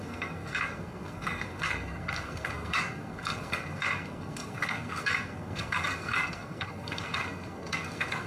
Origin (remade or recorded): remade